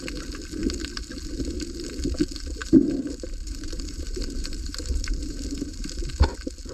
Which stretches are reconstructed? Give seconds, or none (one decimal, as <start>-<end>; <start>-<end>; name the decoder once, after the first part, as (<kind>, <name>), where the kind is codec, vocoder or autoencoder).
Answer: 2.6-6.1 (vocoder, BigVGAN v2)